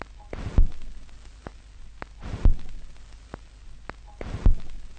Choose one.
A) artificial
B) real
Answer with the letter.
B